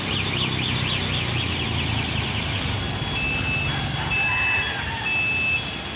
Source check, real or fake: real